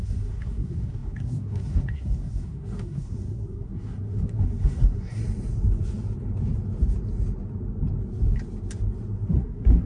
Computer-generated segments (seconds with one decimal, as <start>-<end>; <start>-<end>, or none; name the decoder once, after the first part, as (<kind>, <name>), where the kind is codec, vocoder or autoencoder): 0.0-5.2 (codec, SNAC); 9.3-9.9